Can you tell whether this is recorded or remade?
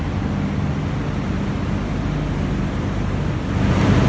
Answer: recorded